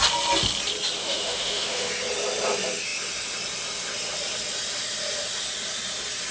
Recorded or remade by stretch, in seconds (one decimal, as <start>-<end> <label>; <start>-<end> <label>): 0.0-1.0 recorded; 1.0-1.9 remade; 1.9-6.3 recorded